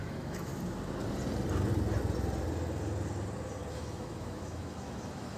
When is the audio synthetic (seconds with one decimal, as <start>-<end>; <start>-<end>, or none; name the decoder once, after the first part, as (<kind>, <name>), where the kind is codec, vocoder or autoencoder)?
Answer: 0.0-0.5 (autoencoder, DAC-VAE); 3.7-5.4